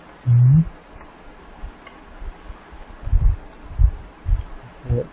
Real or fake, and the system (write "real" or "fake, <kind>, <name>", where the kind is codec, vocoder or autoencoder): real